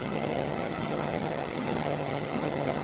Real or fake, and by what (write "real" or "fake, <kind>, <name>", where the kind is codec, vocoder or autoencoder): fake, vocoder, HiFi-GAN